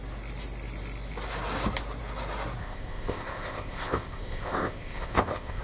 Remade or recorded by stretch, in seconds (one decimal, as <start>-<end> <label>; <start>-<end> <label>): 0.0-2.6 recorded; 2.6-5.6 remade